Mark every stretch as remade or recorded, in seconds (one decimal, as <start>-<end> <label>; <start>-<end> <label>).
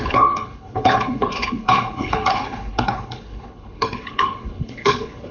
0.0-5.3 remade